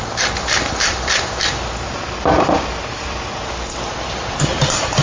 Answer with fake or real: fake